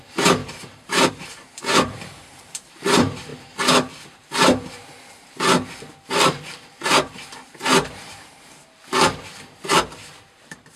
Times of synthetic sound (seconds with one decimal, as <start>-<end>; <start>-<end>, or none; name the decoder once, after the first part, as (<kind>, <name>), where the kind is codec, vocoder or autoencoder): 0.0-3.3 (vocoder, BigVGAN v2); 6.1-8.6; 10.3-10.8